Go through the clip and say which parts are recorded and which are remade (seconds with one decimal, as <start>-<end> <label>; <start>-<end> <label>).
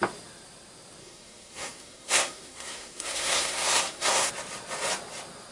0.0-1.0 recorded; 1.0-4.3 remade; 4.3-5.5 recorded